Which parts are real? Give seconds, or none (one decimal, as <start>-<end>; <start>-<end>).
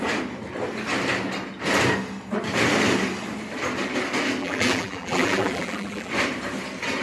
0.0-4.4; 6.1-7.0